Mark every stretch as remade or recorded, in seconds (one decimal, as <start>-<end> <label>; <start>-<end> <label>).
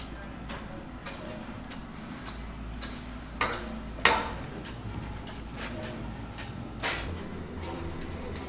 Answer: 0.0-8.5 recorded